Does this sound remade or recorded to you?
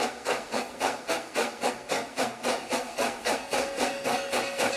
remade